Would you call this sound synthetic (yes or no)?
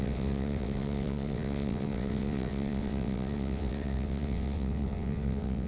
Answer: yes